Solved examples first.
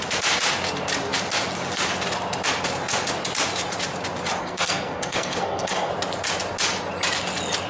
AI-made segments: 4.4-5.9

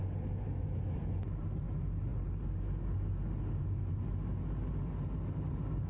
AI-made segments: none

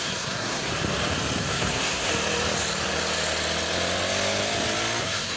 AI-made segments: 0.0-0.7; 1.5-2.1; 5.0-5.4

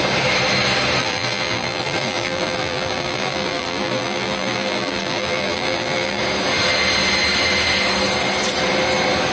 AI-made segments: 1.0-6.2

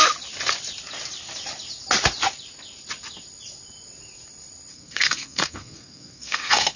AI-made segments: 4.7-6.8

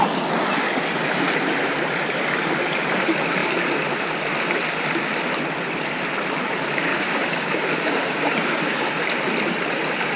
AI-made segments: 6.9-9.0